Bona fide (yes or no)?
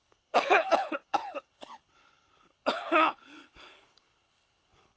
no